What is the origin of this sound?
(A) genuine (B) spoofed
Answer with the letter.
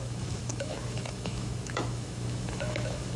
B